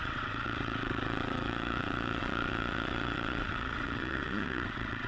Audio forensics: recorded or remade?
remade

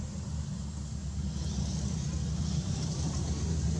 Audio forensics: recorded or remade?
recorded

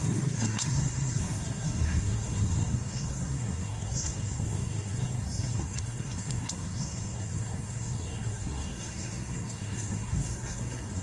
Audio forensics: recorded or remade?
remade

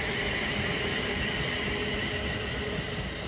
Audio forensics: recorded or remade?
recorded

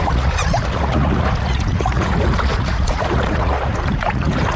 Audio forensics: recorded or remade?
remade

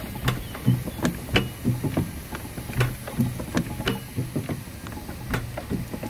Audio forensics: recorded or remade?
recorded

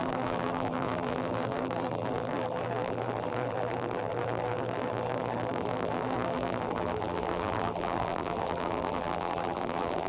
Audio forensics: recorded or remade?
remade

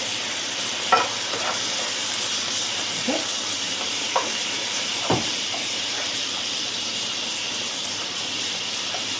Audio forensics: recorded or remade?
remade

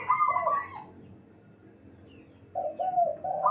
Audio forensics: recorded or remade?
recorded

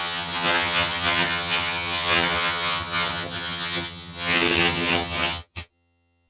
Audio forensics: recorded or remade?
remade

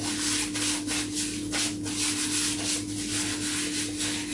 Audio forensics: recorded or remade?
recorded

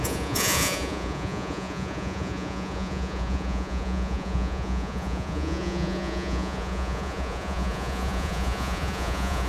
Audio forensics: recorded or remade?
remade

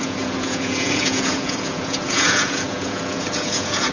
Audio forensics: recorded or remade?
remade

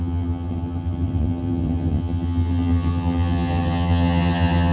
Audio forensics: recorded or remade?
remade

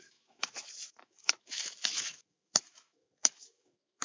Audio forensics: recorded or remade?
remade